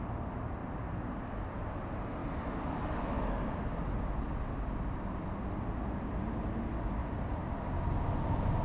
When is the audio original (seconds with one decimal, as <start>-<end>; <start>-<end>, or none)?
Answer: 0.0-0.6; 1.2-7.0; 7.5-8.6